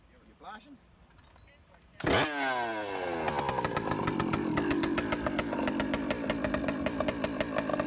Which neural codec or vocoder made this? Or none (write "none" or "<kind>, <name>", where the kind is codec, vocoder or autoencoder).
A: none